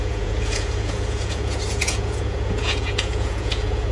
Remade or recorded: remade